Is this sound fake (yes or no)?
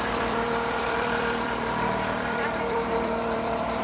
yes